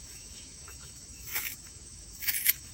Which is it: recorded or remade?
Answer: remade